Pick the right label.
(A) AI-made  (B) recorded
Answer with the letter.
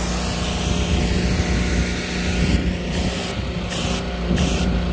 B